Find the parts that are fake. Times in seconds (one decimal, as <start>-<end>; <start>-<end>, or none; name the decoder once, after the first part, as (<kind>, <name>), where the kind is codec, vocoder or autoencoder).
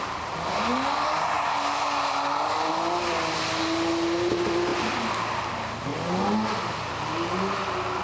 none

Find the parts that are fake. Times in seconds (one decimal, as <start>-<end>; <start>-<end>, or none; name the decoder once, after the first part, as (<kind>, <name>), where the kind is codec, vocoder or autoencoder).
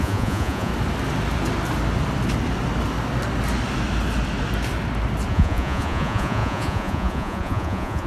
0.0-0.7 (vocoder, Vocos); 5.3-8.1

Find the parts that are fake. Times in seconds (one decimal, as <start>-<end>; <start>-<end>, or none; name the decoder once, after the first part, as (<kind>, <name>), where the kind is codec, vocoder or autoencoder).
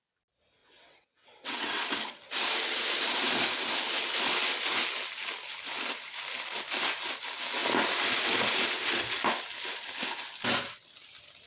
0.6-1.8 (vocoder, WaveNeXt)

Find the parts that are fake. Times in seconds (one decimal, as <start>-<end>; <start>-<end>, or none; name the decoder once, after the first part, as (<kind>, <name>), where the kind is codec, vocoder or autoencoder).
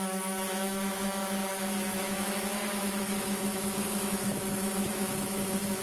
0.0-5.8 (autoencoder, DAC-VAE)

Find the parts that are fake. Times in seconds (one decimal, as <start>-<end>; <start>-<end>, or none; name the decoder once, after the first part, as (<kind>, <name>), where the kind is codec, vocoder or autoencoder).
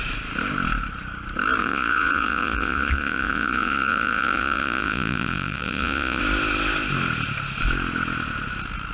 1.6-6.2 (vocoder, Vocos)